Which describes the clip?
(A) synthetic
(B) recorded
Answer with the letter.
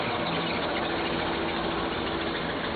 B